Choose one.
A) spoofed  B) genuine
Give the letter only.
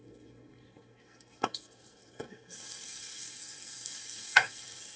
A